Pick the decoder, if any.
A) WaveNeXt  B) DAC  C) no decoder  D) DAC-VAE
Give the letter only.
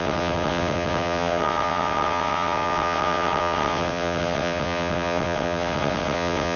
A